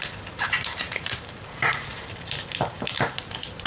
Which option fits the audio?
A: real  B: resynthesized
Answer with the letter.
B